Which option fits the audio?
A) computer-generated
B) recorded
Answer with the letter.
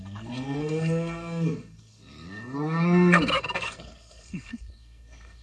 A